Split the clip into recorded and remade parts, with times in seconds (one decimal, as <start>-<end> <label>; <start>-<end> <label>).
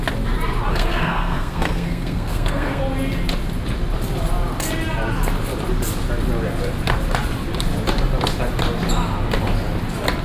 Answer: 0.0-0.7 recorded; 0.7-2.8 remade; 2.8-10.2 recorded